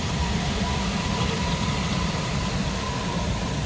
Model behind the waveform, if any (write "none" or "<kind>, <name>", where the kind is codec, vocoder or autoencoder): vocoder, BigVGAN v2